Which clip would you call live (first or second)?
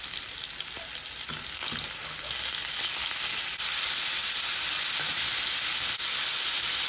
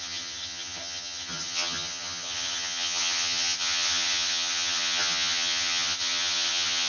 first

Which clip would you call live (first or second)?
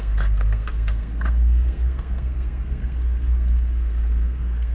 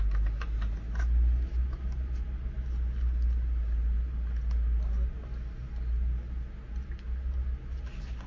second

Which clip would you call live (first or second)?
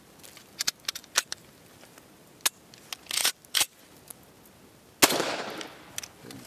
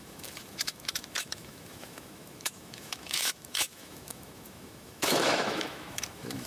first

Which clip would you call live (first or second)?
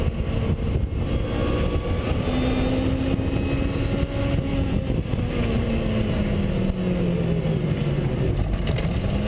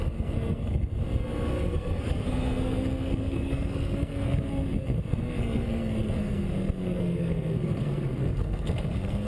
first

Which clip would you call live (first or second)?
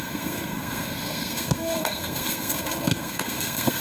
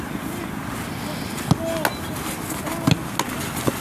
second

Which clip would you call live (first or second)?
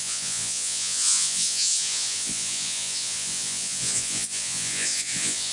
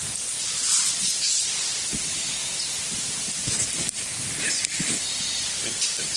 second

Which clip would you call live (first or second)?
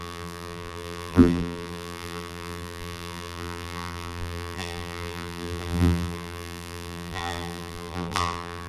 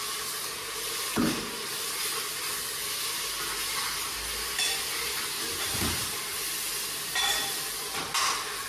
second